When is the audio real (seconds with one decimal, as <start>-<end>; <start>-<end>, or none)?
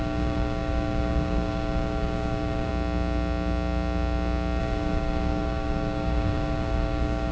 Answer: 2.7-4.6